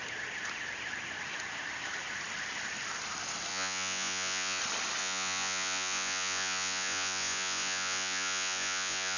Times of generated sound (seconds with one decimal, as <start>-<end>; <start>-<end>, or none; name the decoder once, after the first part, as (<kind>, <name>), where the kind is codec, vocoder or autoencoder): 3.5-4.6 (vocoder, Vocos); 5.0-9.2